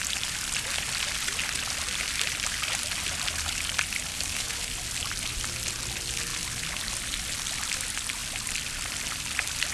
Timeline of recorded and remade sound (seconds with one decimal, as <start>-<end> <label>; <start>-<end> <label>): 0.0-4.1 recorded; 4.1-4.7 remade; 4.7-9.7 recorded